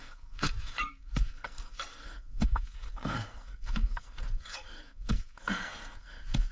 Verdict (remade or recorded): remade